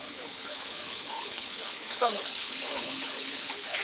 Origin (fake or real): fake